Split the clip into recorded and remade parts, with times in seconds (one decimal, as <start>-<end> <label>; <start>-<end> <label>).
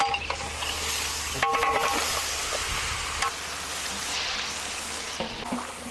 0.0-5.9 recorded